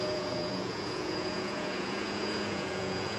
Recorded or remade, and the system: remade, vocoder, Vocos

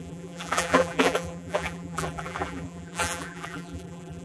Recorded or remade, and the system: remade, vocoder, BigVGAN v2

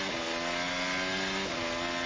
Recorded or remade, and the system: recorded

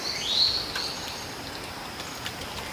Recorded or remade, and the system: recorded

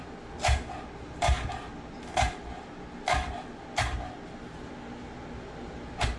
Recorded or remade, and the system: recorded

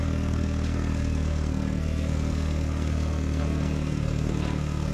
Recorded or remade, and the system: remade, codec, SNAC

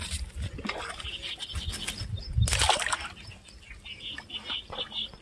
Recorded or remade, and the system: recorded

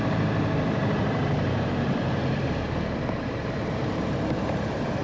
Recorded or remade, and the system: remade, vocoder, BigVGAN v2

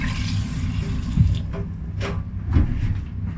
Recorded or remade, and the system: recorded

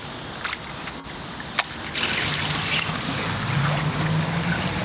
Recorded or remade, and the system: recorded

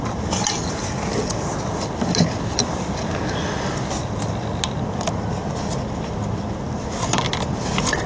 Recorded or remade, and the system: recorded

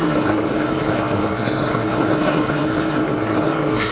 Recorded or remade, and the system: remade, codec, SNAC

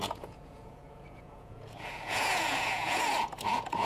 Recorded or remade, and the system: remade, vocoder, Vocos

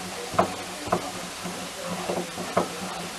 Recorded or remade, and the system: recorded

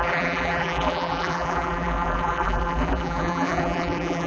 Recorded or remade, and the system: remade, vocoder, BigVGAN v2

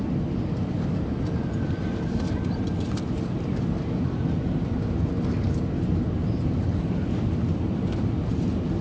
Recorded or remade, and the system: recorded